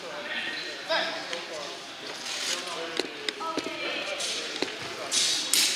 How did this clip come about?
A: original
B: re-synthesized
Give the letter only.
A